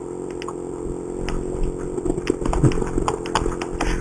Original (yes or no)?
yes